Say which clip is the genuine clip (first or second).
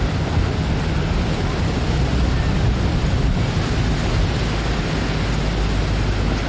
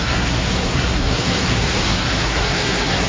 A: first